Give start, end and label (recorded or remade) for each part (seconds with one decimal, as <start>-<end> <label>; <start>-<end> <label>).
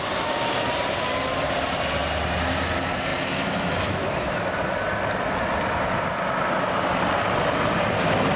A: 0.0-8.4 recorded